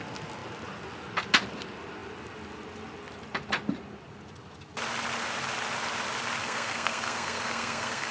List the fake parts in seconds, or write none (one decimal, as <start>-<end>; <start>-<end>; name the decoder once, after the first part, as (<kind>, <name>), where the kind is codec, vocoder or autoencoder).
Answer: 6.4-8.1 (codec, SNAC)